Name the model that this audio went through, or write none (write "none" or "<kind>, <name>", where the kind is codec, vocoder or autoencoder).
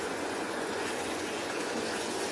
vocoder, Vocos